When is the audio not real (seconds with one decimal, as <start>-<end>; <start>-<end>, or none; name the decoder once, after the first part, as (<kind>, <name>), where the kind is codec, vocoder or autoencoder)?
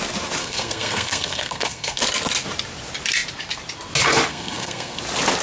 0.4-2.0 (codec, SNAC); 4.3-5.0